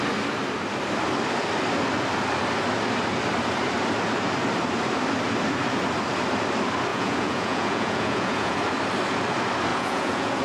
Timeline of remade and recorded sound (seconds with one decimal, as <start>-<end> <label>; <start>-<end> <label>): 0.0-6.9 recorded; 6.9-8.6 remade; 8.6-9.7 recorded; 9.7-10.4 remade